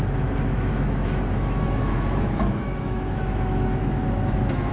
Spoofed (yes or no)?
yes